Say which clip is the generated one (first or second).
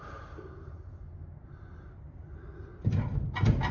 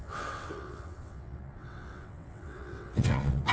second